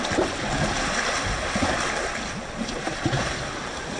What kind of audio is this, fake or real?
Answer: real